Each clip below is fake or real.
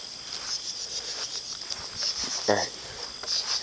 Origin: real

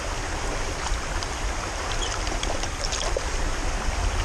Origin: real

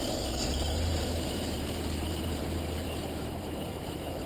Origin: fake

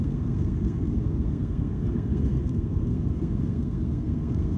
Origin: fake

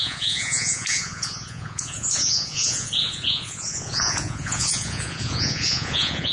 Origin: fake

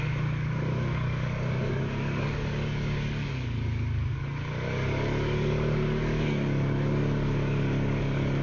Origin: fake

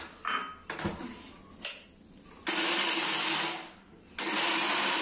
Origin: real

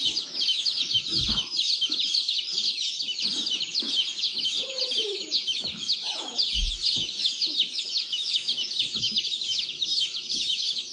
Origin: fake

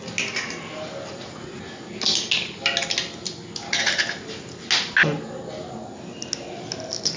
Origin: real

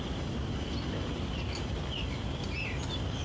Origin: real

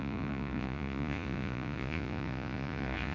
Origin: fake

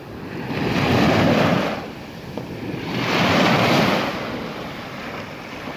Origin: real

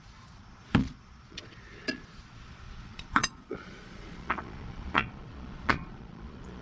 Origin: fake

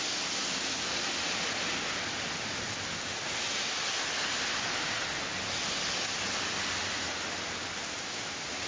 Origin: real